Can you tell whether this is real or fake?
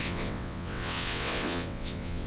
fake